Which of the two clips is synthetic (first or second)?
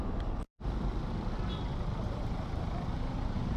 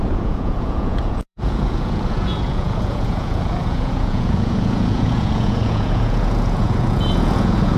second